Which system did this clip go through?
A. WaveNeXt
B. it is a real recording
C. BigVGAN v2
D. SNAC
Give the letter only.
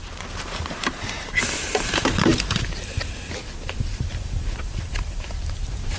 C